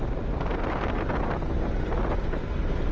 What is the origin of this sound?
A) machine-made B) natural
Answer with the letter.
B